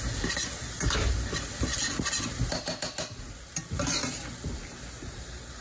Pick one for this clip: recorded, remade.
recorded